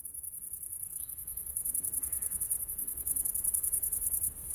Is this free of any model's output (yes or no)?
no